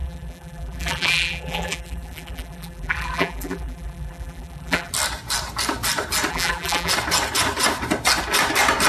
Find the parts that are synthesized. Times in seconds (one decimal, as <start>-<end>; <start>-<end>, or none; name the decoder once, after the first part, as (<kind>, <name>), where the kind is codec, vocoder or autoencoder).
0.0-4.9 (vocoder, BigVGAN v2); 6.3-6.9